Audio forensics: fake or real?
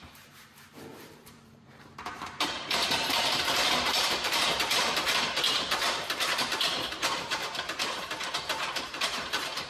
fake